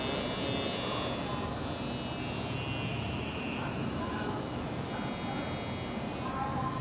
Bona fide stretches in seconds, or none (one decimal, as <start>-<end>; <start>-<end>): 0.0-2.9; 4.9-6.8

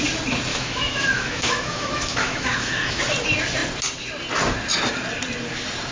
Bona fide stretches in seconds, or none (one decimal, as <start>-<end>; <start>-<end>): 0.0-0.5; 3.0-5.9

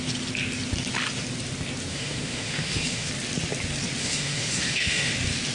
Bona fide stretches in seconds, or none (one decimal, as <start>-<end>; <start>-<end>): 0.0-1.9; 3.1-4.0; 5.1-5.5

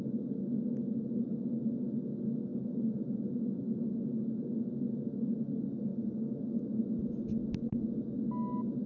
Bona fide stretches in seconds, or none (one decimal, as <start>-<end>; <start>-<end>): 0.0-8.9

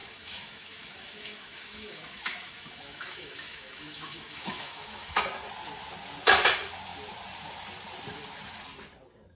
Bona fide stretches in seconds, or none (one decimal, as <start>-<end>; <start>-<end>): 5.2-9.3

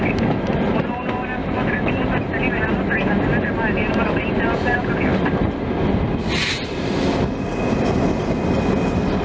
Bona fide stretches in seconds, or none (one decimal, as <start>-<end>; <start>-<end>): 0.0-1.4; 1.9-9.2